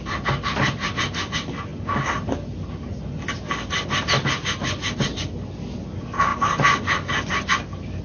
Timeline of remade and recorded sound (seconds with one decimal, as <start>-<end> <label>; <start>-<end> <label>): 0.0-8.0 recorded